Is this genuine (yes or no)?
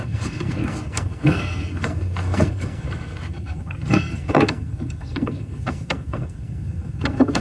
no